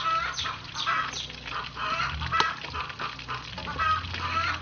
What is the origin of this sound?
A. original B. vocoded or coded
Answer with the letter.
A